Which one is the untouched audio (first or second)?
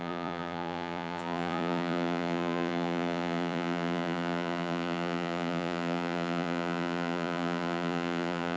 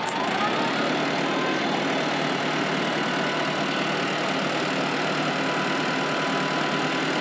second